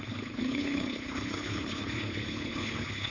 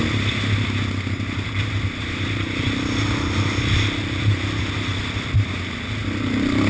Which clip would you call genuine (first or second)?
second